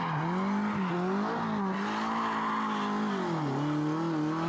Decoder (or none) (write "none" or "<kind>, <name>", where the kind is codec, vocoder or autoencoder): none